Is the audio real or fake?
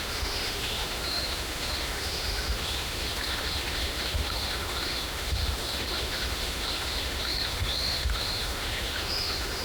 fake